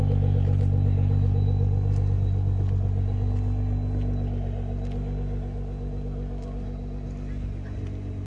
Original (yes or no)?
yes